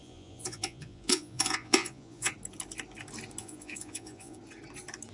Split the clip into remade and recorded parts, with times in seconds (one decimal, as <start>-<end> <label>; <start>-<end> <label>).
0.0-2.3 remade; 2.3-3.4 recorded; 3.4-4.4 remade; 4.4-5.1 recorded